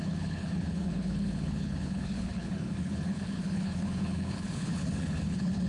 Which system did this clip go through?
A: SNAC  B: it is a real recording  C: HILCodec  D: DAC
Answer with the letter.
C